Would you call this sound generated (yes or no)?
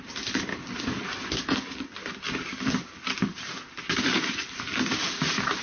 no